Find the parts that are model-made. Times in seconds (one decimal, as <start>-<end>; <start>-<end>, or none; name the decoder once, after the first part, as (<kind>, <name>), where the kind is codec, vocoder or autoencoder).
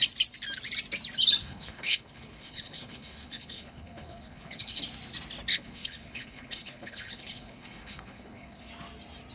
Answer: 1.4-4.8 (codec, HILCodec); 5.5-8.7